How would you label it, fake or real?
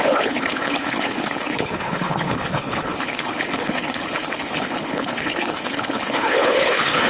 fake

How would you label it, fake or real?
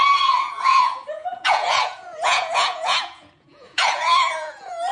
fake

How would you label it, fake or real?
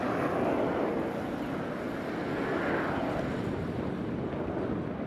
real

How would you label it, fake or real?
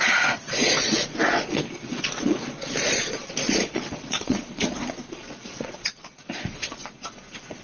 fake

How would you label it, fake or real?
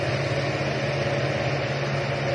real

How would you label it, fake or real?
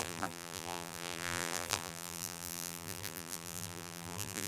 fake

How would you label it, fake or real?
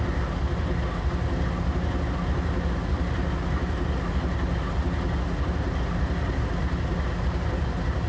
real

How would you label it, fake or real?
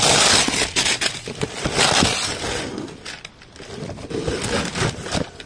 real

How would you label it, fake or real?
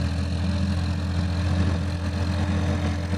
real